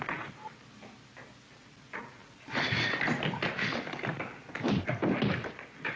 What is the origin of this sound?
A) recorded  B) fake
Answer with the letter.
A